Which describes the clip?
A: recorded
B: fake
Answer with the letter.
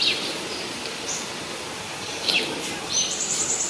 A